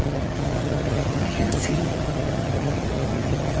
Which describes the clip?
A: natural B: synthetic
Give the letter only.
B